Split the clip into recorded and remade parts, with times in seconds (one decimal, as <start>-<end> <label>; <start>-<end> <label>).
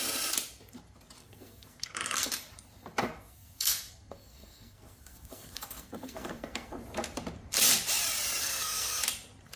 0.0-1.2 recorded; 1.2-2.3 remade; 2.3-3.0 recorded; 3.0-6.8 remade; 6.8-8.4 recorded; 8.4-9.0 remade; 9.0-9.6 recorded